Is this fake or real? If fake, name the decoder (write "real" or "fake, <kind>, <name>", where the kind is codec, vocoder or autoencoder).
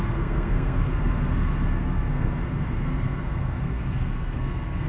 fake, codec, SNAC